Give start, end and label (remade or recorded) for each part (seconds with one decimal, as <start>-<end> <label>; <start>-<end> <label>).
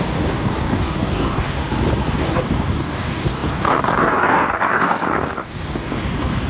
0.0-1.6 remade; 1.6-2.1 recorded; 2.1-6.5 remade